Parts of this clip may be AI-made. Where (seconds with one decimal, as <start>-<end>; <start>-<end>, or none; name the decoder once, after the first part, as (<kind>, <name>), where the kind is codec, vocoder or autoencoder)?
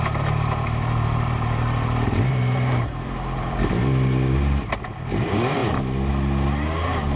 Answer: 0.0-7.2 (vocoder, BigVGAN v2)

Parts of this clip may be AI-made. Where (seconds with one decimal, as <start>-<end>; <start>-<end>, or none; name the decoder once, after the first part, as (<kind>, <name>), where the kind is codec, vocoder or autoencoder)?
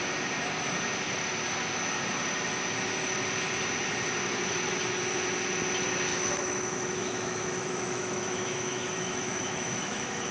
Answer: 6.1-10.3 (autoencoder, DAC-VAE)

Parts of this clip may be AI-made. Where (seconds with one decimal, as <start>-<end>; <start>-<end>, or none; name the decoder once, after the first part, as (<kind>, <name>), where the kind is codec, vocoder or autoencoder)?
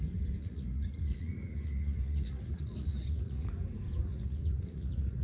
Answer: 0.4-3.5 (vocoder, Vocos); 4.1-5.2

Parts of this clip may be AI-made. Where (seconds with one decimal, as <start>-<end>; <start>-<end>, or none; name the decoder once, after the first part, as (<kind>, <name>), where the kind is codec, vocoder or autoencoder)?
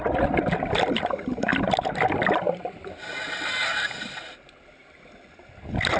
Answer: none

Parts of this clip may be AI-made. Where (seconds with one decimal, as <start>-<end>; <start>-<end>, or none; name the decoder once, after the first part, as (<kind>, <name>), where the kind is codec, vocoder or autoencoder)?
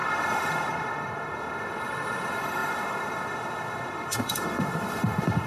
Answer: 0.0-5.5 (autoencoder, DAC-VAE)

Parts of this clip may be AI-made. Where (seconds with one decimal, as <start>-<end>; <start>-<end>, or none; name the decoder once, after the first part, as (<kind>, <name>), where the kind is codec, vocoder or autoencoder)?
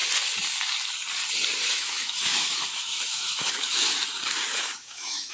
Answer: 1.6-3.9 (autoencoder, DAC-VAE); 4.6-5.3